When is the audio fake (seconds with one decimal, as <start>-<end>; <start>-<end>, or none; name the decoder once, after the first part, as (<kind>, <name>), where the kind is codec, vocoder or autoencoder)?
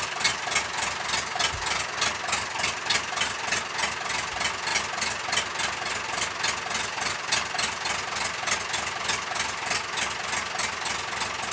none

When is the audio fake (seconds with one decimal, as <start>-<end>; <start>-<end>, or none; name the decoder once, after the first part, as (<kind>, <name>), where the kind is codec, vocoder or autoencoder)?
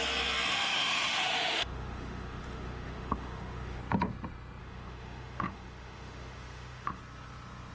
0.5-3.8 (autoencoder, DAC-VAE); 4.6-7.0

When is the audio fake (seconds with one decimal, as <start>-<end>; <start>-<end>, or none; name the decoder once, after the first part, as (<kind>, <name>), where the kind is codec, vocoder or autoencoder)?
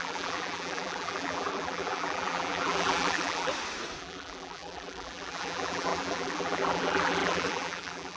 0.0-3.5 (vocoder, BigVGAN v2); 4.0-8.2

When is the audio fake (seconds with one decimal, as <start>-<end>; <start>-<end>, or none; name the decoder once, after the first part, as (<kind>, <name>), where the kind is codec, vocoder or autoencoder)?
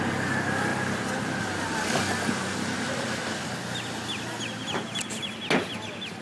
none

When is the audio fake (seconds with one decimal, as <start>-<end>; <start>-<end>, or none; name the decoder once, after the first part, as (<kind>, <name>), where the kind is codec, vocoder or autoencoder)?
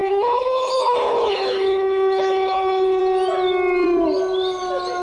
0.0-3.0 (codec, HILCodec)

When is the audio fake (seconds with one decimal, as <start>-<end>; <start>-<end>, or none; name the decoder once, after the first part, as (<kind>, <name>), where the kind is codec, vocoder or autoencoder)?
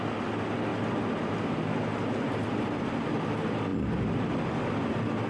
3.7-4.3 (vocoder, BigVGAN v2)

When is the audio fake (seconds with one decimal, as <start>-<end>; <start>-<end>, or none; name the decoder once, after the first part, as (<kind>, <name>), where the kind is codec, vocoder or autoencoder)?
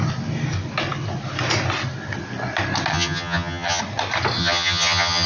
2.9-3.8 (vocoder, HiFi-GAN); 4.4-5.3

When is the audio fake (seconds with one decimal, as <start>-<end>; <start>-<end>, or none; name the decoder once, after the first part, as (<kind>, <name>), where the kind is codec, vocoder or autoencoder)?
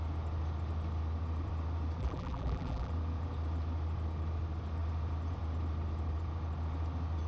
2.0-2.9 (vocoder, BigVGAN v2)